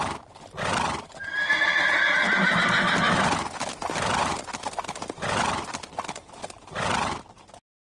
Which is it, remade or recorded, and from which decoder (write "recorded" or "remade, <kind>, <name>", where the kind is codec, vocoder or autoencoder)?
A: recorded